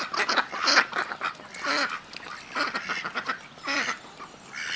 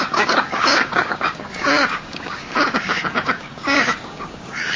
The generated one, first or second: second